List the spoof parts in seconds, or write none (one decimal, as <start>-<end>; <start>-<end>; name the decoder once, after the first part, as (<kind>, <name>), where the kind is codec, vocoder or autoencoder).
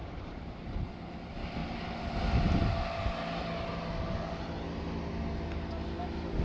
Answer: 0.0-0.9 (vocoder, BigVGAN v2)